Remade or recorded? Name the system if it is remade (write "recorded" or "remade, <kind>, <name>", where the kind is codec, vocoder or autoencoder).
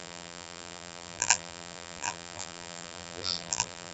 remade, vocoder, BigVGAN v2